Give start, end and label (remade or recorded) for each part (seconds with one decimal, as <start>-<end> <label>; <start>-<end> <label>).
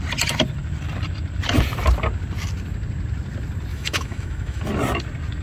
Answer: 0.0-3.7 recorded; 3.7-4.6 remade; 4.6-5.4 recorded